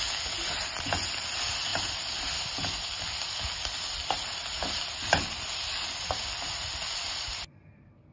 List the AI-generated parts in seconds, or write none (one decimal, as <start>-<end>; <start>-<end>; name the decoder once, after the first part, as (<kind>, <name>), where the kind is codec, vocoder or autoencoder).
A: none